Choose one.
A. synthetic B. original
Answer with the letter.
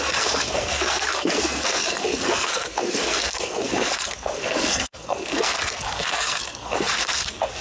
A